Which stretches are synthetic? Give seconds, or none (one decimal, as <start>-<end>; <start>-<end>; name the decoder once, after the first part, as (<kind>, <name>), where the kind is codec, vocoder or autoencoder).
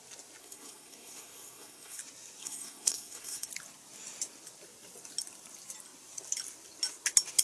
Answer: 0.4-2.0 (codec, SNAC); 2.4-3.5